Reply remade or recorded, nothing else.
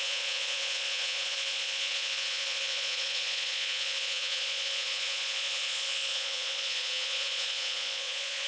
remade